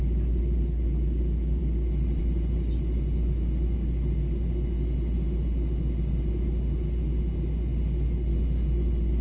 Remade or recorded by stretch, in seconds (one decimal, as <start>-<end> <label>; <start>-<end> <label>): 0.0-9.2 recorded